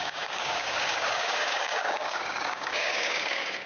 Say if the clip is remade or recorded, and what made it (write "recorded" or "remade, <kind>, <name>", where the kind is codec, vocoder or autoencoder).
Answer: remade, codec, DAC